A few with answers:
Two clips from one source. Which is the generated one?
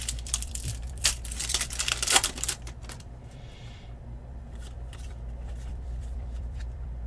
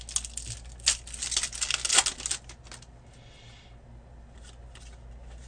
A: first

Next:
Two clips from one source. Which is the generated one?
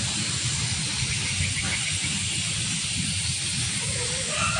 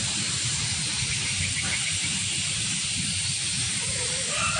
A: second